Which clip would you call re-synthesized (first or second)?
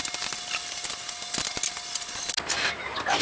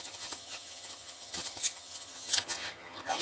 second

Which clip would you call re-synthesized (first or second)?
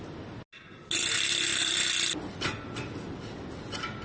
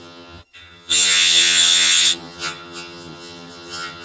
second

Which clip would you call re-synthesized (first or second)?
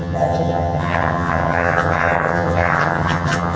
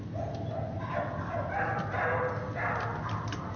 first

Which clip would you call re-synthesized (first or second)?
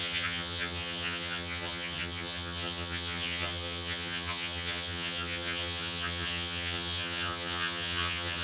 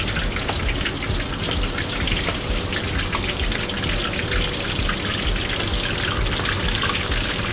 first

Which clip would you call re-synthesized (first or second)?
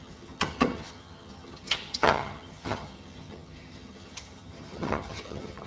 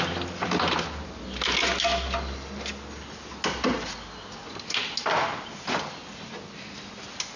first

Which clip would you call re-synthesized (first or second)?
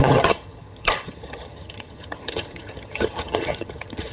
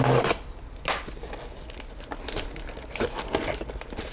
first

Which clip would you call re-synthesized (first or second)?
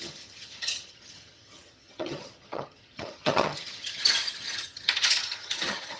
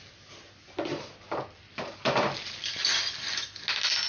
first